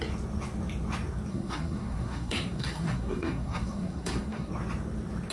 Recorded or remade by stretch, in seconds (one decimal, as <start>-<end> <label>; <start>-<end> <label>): 0.0-1.3 recorded; 1.3-4.5 remade; 4.5-5.3 recorded